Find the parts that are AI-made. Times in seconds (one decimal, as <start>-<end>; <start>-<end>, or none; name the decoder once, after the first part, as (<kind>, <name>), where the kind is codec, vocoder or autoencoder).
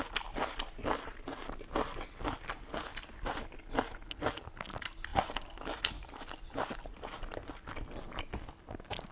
none